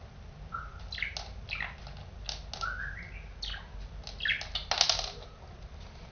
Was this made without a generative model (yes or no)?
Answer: yes